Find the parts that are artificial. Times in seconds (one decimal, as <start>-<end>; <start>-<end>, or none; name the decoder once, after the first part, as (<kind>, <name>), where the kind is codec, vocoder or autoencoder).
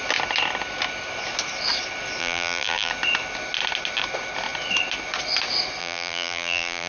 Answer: 2.2-2.9 (vocoder, BigVGAN v2); 5.8-6.9